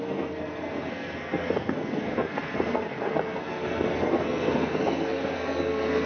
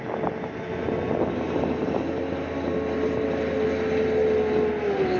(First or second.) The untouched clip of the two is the second